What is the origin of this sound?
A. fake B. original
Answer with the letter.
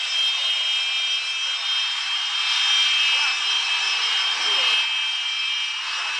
B